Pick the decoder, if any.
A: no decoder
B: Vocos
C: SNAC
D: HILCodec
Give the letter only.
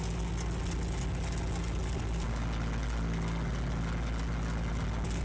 A